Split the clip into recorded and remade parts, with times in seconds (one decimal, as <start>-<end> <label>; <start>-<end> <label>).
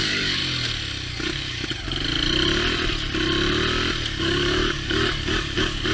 0.0-0.4 remade; 0.4-1.1 recorded; 1.1-1.6 remade; 1.6-4.2 recorded; 4.2-5.9 remade